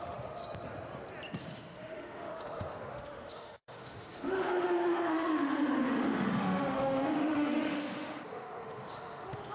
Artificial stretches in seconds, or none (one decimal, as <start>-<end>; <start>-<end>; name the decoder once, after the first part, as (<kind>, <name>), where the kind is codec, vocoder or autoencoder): 0.0-0.4 (autoencoder, DAC-VAE); 1.4-9.5